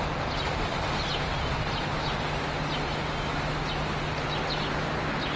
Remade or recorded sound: recorded